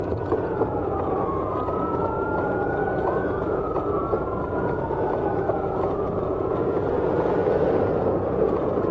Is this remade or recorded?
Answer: remade